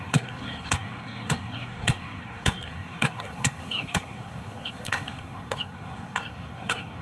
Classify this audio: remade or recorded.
remade